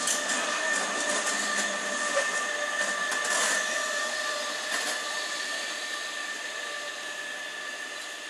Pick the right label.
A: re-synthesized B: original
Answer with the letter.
B